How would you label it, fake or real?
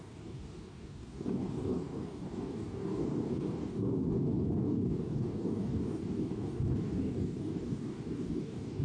fake